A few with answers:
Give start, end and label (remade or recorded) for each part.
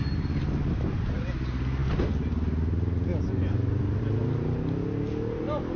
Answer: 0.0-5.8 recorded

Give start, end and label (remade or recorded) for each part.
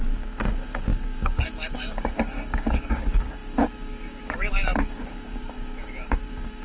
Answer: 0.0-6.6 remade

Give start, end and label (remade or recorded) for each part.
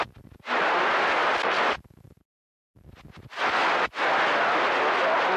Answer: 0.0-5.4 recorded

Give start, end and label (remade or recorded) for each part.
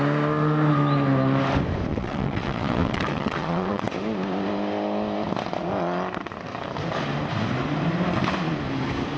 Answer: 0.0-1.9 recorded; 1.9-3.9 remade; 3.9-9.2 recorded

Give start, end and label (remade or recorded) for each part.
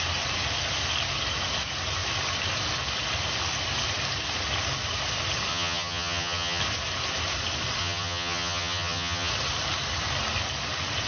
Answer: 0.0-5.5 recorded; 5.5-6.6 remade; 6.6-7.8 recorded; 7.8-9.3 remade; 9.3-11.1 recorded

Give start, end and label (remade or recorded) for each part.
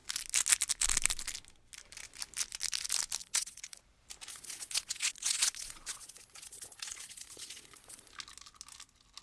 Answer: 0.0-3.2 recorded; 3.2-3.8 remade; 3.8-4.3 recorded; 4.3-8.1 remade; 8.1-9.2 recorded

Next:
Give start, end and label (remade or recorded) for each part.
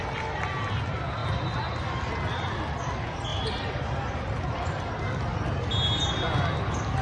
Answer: 0.0-7.0 recorded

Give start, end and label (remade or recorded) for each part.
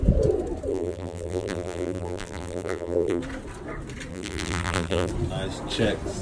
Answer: 0.0-0.7 recorded; 0.7-3.2 remade; 3.2-4.1 recorded; 4.1-5.1 remade; 5.1-6.2 recorded